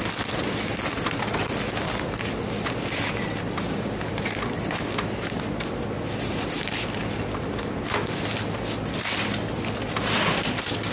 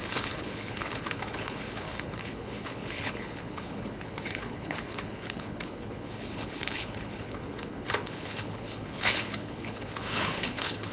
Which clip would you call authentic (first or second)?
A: first